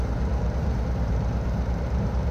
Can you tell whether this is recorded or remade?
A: remade